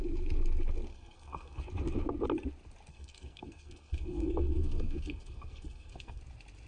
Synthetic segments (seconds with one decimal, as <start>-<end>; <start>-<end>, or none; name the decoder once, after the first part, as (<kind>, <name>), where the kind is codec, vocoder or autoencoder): 0.9-1.6 (codec, SNAC); 2.9-6.2